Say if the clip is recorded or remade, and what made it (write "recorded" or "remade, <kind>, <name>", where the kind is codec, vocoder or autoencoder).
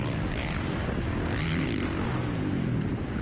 recorded